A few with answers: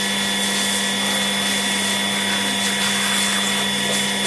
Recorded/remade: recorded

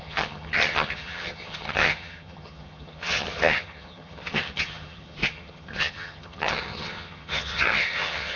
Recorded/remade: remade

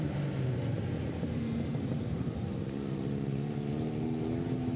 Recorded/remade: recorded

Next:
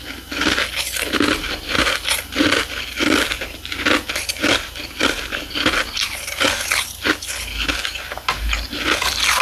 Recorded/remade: recorded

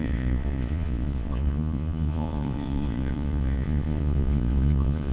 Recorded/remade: remade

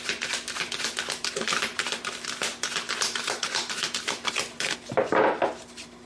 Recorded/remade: recorded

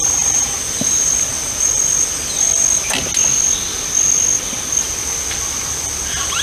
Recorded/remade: recorded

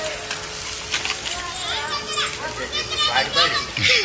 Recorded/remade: recorded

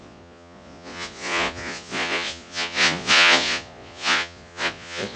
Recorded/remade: remade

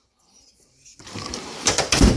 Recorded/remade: remade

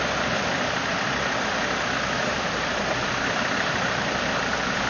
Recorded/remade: recorded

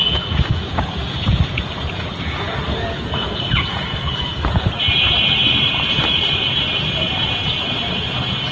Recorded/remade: remade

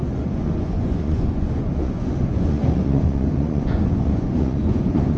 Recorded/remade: remade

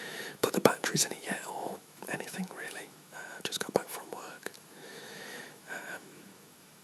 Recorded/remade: remade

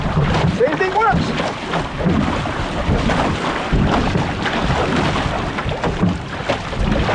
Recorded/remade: recorded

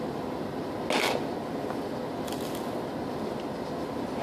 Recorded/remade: recorded